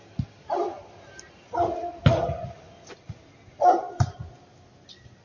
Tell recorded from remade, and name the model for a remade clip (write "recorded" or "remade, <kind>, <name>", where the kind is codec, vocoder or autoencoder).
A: recorded